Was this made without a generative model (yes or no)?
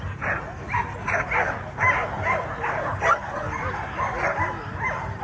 yes